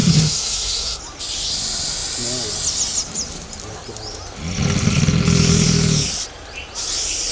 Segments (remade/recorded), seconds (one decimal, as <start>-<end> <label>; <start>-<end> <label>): 0.0-1.0 remade; 1.0-7.3 recorded